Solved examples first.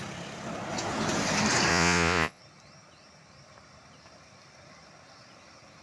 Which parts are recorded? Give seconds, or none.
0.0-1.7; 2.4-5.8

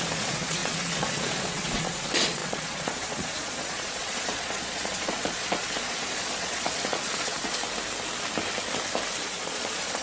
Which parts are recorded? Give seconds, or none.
7.6-9.2

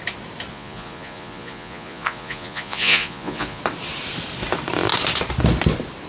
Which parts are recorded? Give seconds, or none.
0.0-0.5; 3.6-6.1

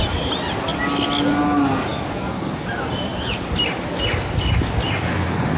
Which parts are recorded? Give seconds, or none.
0.0-5.6